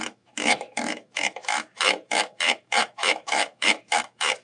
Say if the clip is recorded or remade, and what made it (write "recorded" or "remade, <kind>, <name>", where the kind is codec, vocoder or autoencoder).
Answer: remade, autoencoder, DAC-VAE